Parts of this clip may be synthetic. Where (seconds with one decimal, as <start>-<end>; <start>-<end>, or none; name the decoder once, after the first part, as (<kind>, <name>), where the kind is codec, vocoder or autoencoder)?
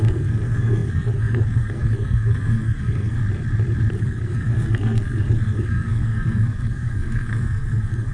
0.0-3.2 (codec, SNAC); 4.0-8.1